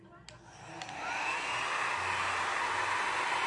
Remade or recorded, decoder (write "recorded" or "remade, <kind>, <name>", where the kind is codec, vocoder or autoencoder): recorded